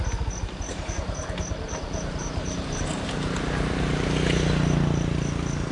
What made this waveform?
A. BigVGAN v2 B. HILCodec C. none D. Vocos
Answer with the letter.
C